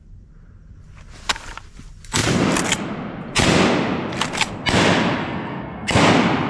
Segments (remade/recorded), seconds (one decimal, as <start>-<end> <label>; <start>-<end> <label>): 0.0-5.2 recorded; 5.2-6.0 remade; 6.0-6.5 recorded

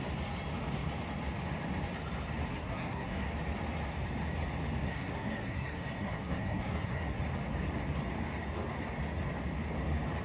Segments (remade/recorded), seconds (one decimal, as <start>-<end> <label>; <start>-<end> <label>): 0.0-2.5 recorded; 2.5-3.3 remade; 3.3-4.8 recorded; 4.8-7.2 remade; 7.2-10.2 recorded

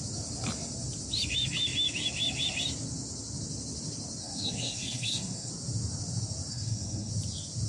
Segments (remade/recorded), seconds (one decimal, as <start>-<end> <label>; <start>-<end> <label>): 0.0-4.2 recorded; 4.2-5.5 remade; 5.5-6.5 recorded; 6.5-7.1 remade; 7.1-7.7 recorded